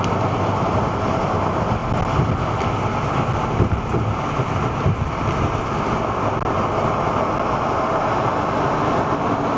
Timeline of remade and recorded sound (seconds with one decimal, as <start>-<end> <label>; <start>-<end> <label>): 0.0-9.6 recorded